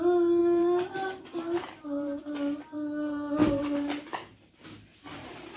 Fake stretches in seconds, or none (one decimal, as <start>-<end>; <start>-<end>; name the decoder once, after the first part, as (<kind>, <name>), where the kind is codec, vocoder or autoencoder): 0.4-2.2 (vocoder, BigVGAN v2); 3.4-5.6